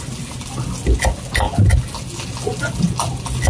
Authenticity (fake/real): real